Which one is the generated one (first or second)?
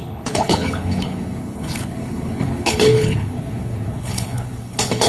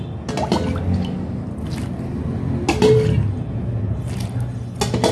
first